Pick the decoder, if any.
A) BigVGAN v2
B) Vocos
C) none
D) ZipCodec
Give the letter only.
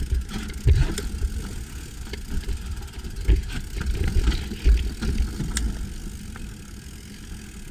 C